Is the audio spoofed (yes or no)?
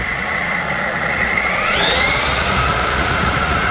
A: yes